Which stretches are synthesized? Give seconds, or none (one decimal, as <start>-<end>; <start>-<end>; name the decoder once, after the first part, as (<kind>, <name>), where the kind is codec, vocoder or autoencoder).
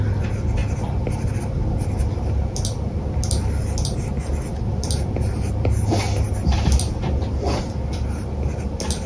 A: none